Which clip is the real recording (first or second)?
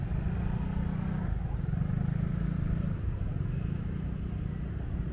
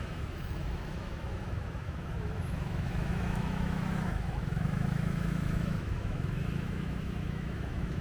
first